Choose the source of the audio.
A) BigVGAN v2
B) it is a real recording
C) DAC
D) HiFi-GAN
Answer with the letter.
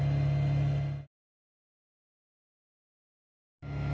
B